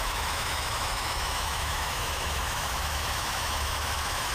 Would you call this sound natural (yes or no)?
no